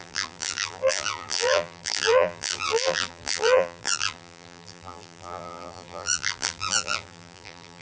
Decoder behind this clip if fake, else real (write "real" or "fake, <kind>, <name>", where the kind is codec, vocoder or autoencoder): fake, vocoder, BigVGAN v2